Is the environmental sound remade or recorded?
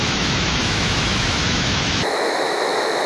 remade